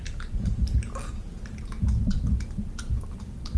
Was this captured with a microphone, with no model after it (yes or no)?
yes